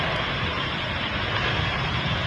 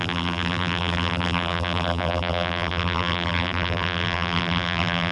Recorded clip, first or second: first